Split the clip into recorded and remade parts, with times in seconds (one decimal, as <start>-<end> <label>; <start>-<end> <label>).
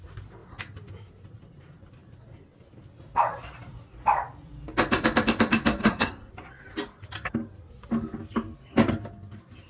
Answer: 0.0-5.8 recorded; 5.8-6.3 remade; 6.3-9.7 recorded